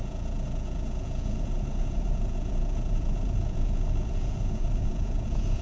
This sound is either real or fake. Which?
fake